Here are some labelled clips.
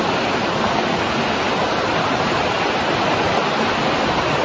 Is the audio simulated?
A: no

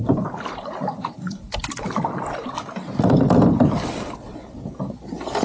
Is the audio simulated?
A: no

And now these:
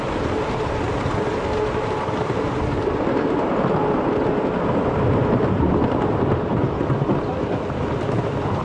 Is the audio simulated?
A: no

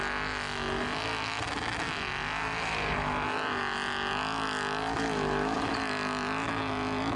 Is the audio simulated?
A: no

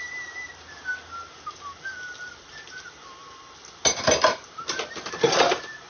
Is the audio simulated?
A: no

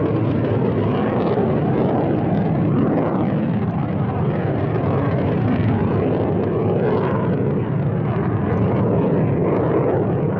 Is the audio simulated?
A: no